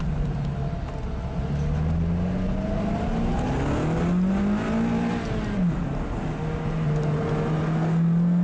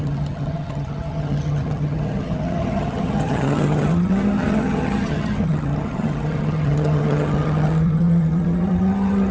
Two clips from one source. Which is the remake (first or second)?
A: second